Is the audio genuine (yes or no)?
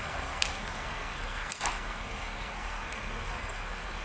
no